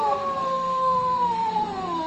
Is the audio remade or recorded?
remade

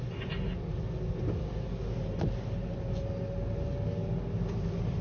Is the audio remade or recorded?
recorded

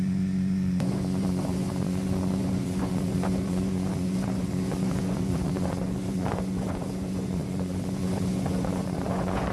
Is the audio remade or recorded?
remade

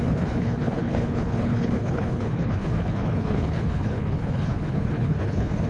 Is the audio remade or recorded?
remade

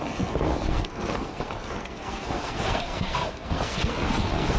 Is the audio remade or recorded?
remade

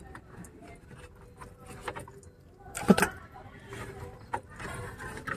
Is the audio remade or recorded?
recorded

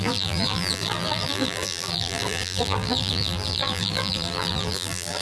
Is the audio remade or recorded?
remade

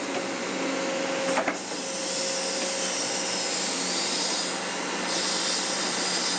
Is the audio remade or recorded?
recorded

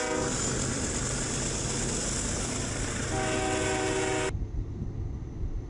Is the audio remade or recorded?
recorded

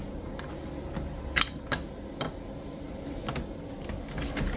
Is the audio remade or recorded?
recorded